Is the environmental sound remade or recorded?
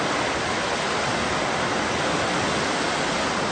recorded